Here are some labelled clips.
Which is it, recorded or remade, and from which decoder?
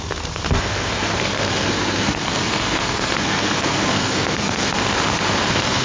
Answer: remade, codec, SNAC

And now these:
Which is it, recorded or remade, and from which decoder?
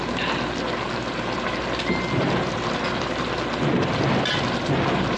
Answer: recorded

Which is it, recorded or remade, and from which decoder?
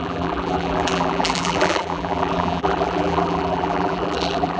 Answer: remade, vocoder, BigVGAN v2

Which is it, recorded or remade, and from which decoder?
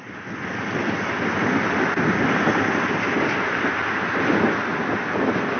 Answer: recorded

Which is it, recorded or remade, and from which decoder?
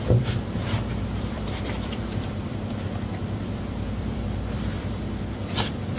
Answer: remade, vocoder, BigVGAN v2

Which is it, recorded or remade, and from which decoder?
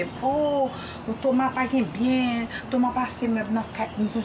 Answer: recorded